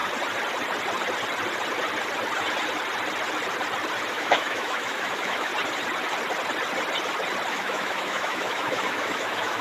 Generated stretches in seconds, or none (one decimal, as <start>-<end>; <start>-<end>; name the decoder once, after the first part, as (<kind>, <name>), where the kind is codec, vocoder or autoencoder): 4.1-5.5 (autoencoder, DAC-VAE); 7.5-9.6